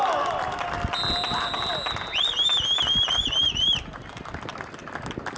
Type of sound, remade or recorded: recorded